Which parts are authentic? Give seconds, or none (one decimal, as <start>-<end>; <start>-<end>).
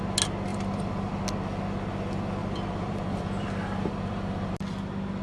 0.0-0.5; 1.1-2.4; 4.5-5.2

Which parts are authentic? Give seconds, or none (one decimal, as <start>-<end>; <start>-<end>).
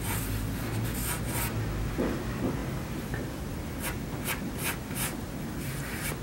0.0-2.6; 3.5-6.2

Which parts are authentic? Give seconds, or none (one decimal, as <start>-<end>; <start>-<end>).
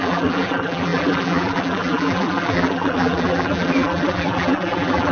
none